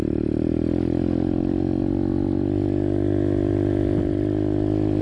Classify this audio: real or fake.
real